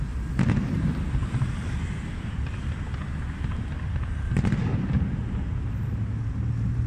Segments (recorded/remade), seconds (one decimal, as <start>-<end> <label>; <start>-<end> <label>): 0.0-1.2 recorded; 1.2-2.8 remade; 2.8-4.7 recorded; 4.7-5.5 remade; 5.5-6.9 recorded